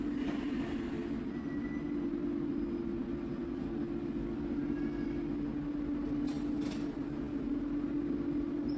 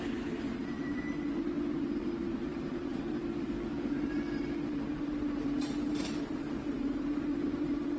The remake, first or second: second